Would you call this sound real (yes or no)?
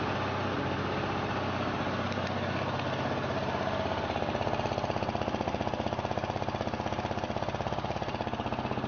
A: yes